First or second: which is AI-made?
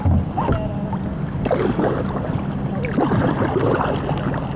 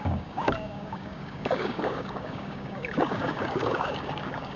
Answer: second